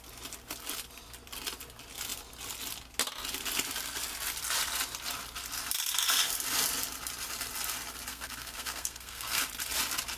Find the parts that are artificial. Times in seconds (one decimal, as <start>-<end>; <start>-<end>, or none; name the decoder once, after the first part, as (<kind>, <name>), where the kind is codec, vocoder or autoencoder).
8.1-9.4 (codec, SNAC)